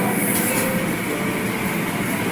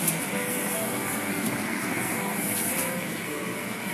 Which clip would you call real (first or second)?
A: first